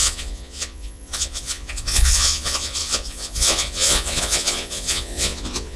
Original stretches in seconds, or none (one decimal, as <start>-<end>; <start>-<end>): none